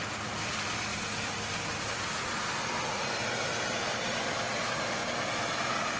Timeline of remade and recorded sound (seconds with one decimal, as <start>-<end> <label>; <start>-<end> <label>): 0.0-6.0 recorded